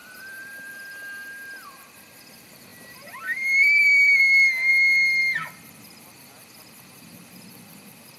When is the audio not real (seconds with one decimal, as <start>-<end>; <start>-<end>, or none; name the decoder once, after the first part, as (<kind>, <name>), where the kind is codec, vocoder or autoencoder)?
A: 0.0-0.7 (vocoder, BigVGAN v2); 2.7-4.2